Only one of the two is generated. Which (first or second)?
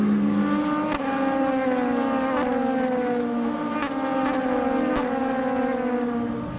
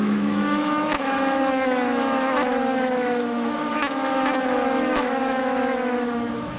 second